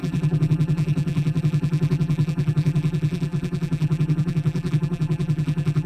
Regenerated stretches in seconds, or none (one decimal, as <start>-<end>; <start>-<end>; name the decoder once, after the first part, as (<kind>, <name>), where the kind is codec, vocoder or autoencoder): 0.0-5.9 (vocoder, BigVGAN v2)